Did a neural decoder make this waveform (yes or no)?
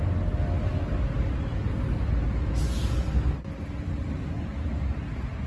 no